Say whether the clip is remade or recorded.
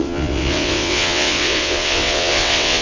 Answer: remade